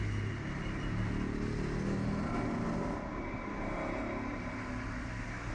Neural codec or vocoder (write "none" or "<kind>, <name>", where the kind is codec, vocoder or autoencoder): none